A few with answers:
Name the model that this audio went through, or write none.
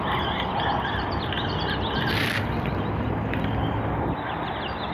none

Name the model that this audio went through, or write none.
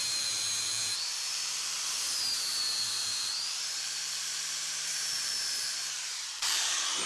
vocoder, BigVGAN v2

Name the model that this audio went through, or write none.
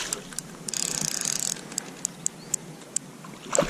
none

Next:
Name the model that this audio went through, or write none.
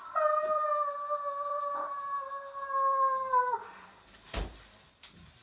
vocoder, BigVGAN v2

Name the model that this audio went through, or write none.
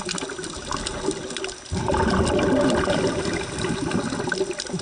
none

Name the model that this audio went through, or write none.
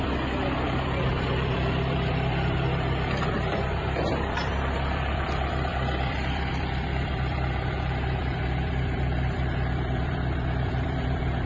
vocoder, BigVGAN v2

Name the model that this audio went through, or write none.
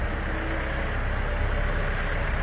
none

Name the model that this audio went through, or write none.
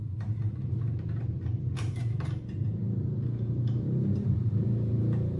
vocoder, BigVGAN v2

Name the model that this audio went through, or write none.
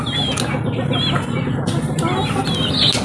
none